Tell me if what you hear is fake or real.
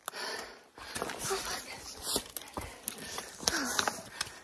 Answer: fake